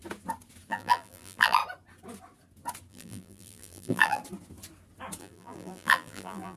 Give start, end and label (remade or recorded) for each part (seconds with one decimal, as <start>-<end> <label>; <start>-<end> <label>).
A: 0.0-0.7 recorded; 0.7-1.6 remade; 1.6-2.9 recorded; 2.9-4.2 remade; 4.2-5.2 recorded; 5.2-6.6 remade